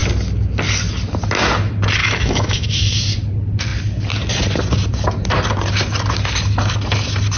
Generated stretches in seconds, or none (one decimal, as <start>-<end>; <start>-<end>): 2.0-3.0